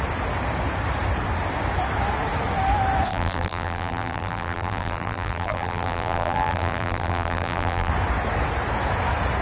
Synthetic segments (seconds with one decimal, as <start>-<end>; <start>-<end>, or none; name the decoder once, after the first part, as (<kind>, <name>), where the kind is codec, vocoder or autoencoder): 3.1-7.9 (vocoder, BigVGAN v2)